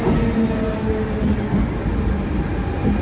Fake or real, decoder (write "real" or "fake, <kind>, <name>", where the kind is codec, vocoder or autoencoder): real